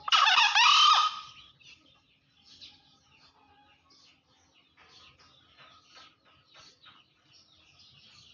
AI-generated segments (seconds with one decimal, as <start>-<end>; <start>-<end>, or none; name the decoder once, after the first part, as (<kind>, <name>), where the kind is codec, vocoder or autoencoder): none